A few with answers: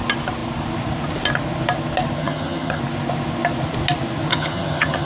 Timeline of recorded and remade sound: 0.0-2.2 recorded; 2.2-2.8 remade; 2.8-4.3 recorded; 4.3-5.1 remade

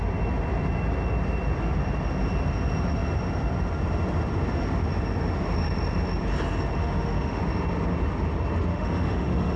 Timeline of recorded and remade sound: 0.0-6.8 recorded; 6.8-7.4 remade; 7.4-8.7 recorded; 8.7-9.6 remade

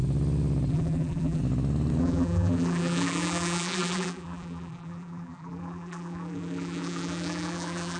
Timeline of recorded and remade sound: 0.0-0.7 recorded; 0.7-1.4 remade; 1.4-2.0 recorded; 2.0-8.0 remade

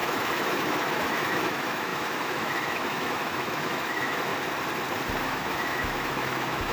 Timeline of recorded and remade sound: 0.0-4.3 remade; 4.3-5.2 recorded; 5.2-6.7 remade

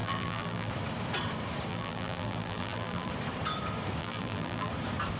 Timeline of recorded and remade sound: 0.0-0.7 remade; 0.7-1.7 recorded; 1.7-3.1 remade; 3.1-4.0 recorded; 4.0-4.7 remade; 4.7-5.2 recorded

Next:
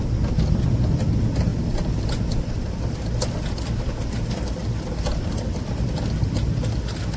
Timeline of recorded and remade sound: 0.0-7.2 recorded

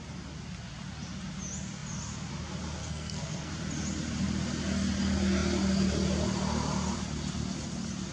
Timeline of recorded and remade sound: 0.0-2.8 recorded; 2.8-3.5 remade; 3.5-8.1 recorded